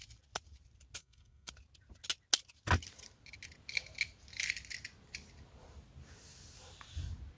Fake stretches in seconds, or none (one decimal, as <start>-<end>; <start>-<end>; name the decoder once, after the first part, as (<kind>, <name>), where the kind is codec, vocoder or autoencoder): 1.0-1.5 (codec, SNAC)